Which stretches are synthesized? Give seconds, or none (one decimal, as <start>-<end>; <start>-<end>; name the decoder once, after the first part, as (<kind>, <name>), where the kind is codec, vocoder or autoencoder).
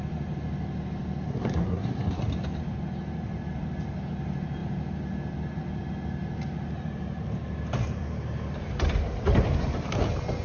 1.3-2.2 (codec, SNAC)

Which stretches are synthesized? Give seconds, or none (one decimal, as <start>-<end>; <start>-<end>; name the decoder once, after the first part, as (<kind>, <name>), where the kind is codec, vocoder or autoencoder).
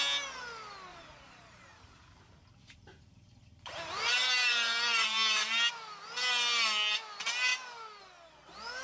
0.9-5.7 (vocoder, BigVGAN v2)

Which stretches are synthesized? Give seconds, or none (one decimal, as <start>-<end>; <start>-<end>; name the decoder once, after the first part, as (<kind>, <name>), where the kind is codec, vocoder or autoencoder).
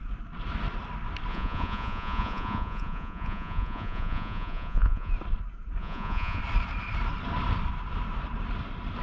1.3-5.1 (vocoder, Vocos); 5.8-6.4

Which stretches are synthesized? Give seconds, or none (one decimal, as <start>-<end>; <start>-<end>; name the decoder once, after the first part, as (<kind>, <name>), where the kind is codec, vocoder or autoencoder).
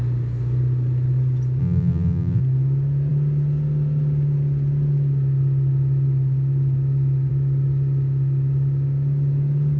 1.6-2.4 (vocoder, BigVGAN v2)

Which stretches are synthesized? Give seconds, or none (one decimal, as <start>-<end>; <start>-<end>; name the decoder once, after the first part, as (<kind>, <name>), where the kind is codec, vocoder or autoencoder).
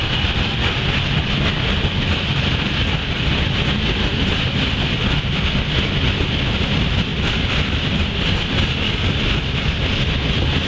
none